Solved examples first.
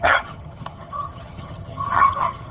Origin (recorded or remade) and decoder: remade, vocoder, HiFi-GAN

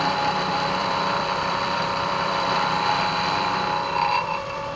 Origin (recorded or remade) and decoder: remade, vocoder, BigVGAN v2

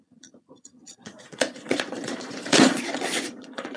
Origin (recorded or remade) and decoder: remade, vocoder, Vocos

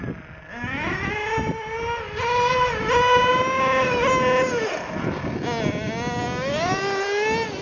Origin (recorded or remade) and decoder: recorded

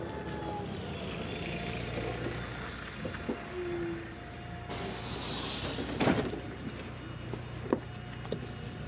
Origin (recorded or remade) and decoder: recorded